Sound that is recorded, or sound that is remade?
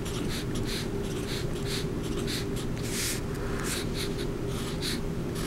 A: recorded